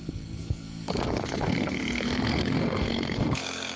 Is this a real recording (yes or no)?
no